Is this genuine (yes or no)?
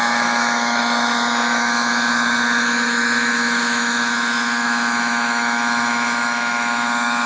no